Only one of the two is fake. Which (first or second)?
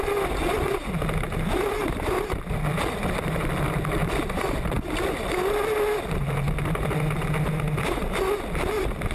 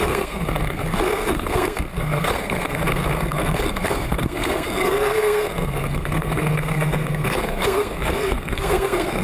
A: second